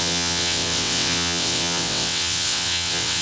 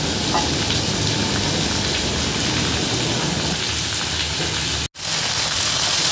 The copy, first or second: first